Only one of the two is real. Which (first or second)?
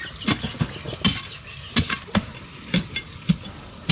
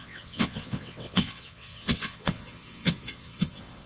first